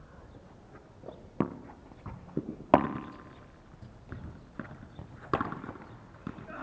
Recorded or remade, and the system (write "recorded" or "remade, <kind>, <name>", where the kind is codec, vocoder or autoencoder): recorded